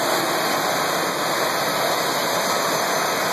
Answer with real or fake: real